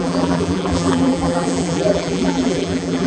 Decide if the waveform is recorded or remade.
remade